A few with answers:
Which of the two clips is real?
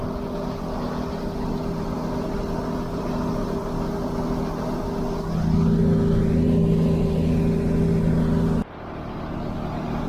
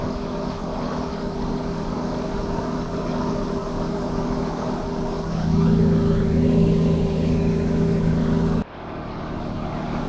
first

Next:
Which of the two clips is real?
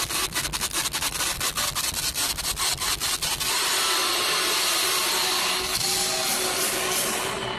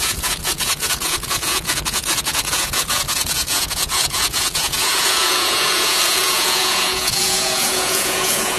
first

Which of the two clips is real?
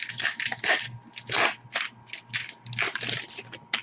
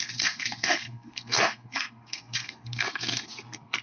first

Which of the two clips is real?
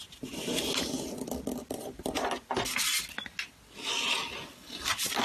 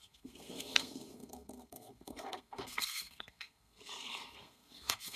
first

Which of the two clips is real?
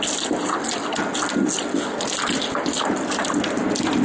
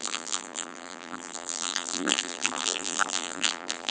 first